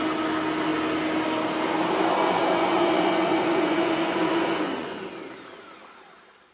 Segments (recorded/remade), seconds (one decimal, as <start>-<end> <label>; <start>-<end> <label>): 0.0-2.2 recorded; 2.2-5.0 remade; 5.0-6.5 recorded